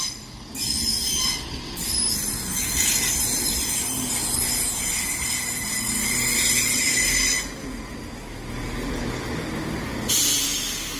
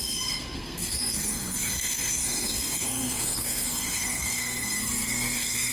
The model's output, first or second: second